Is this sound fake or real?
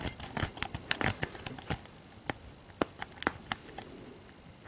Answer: real